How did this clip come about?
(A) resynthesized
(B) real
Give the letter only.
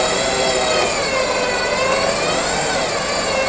B